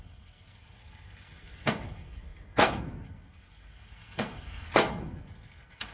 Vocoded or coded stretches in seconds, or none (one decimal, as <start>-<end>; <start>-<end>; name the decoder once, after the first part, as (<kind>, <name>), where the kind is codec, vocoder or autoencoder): 0.0-5.9 (codec, SNAC)